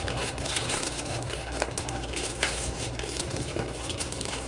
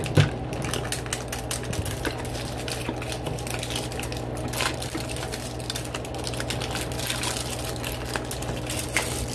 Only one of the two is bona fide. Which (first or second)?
second